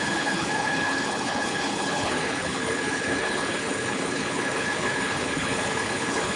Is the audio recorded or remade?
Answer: remade